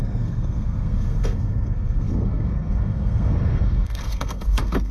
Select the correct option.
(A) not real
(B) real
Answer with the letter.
A